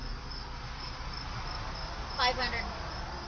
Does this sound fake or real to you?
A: real